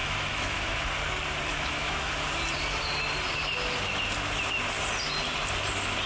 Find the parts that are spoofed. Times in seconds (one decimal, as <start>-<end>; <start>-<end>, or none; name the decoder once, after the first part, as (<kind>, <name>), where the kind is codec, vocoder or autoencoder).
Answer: 0.0-0.9 (autoencoder, DAC-VAE); 1.5-2.1